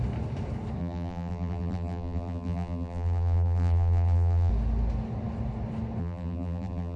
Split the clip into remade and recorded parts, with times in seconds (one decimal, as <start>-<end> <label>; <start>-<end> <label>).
0.0-0.8 recorded; 0.8-4.5 remade; 4.5-6.0 recorded; 6.0-7.0 remade